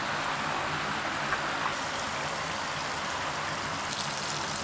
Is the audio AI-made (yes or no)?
no